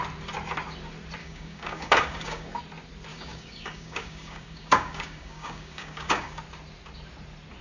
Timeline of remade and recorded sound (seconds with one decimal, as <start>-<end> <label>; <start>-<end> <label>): 0.0-1.2 recorded; 1.2-2.6 remade; 2.6-3.1 recorded; 3.1-6.4 remade; 6.4-7.6 recorded